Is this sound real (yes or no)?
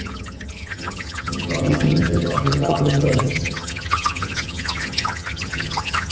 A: no